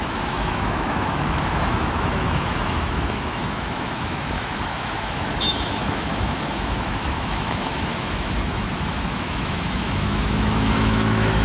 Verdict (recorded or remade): remade